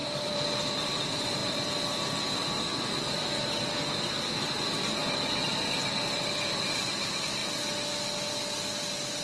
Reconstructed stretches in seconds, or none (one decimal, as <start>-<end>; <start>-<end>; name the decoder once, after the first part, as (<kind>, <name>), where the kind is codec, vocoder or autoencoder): 0.0-0.7 (vocoder, BigVGAN v2)